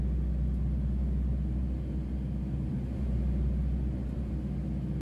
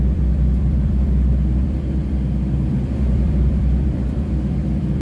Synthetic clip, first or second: second